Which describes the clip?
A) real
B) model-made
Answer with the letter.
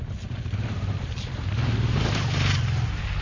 A